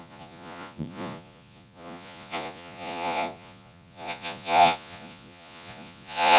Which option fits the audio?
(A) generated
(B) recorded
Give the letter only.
A